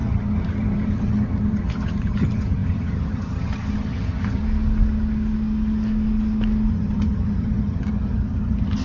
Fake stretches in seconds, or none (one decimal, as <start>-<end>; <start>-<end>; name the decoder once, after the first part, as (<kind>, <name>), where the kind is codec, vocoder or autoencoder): 0.0-4.4 (vocoder, HiFi-GAN); 6.7-8.8